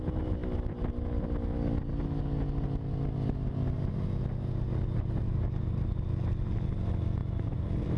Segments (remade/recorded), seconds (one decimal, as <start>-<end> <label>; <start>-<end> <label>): 0.0-8.0 recorded